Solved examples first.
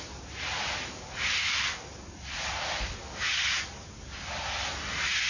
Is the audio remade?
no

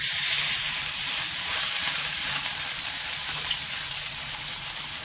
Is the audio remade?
yes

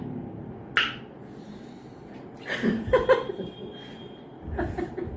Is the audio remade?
no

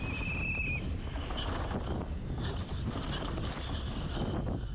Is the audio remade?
no